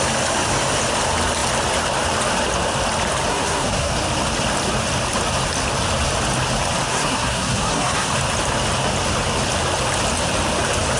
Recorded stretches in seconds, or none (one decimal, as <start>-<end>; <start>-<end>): 0.0-3.3; 3.9-6.9; 8.1-11.0